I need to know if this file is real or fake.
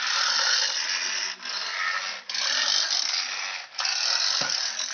real